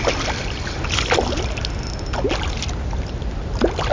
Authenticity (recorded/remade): recorded